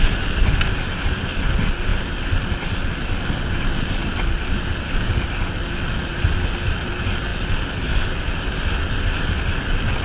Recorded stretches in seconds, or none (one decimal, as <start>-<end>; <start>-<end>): 0.0-10.0